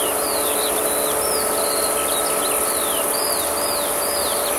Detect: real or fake real